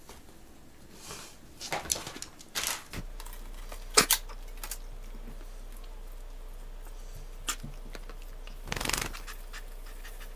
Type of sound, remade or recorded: recorded